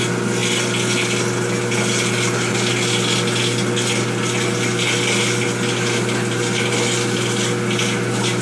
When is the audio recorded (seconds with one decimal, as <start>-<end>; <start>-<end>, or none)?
0.0-8.4